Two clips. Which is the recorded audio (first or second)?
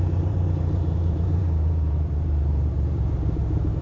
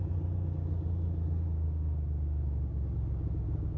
second